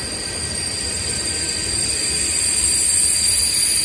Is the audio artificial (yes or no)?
no